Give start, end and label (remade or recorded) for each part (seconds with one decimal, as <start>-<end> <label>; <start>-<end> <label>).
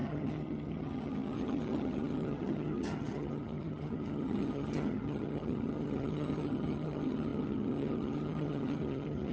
0.0-9.3 remade